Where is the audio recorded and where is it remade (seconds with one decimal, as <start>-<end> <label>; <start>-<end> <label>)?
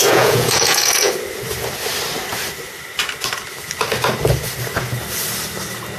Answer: 0.0-1.1 remade; 1.1-6.0 recorded